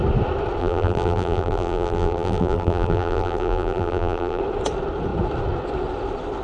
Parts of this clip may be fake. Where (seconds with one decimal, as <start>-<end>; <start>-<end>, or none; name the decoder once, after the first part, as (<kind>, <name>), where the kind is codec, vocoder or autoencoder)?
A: 0.6-4.4 (vocoder, BigVGAN v2)